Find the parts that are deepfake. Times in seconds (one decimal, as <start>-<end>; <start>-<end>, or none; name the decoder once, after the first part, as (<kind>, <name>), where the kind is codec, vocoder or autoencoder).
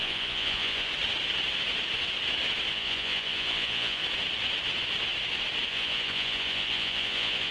0.0-0.9 (vocoder, Vocos); 2.7-4.0; 5.7-7.5